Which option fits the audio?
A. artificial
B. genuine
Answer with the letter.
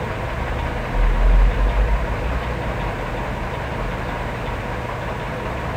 B